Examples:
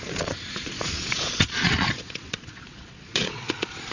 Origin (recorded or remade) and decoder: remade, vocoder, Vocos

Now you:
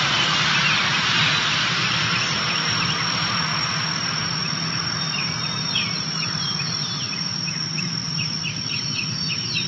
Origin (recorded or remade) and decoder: remade, vocoder, BigVGAN v2